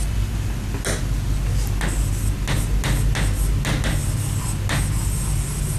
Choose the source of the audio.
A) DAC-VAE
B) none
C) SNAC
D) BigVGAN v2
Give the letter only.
B